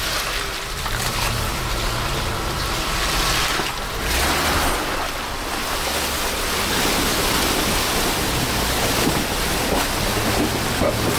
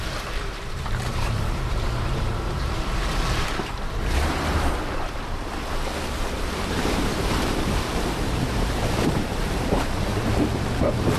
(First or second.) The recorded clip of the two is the first